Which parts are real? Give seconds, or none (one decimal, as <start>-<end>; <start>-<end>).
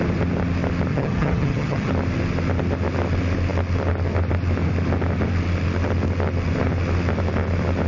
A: 0.0-0.9; 1.9-7.9